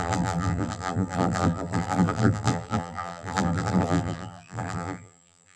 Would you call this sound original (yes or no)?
no